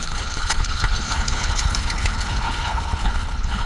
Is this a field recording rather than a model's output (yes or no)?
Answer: no